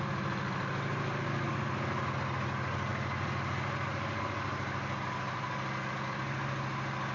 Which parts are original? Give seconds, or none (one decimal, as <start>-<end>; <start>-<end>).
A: 0.0-2.9; 4.2-7.1